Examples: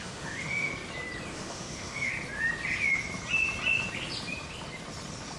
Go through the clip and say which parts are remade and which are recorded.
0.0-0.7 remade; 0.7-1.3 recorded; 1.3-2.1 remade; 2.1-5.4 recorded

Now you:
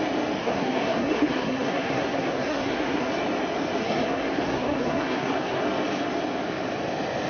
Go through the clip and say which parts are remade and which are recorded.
0.0-0.4 recorded; 0.4-3.1 remade; 3.1-3.8 recorded; 3.8-5.6 remade; 5.6-7.3 recorded